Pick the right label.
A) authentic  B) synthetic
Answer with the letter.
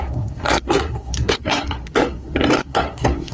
B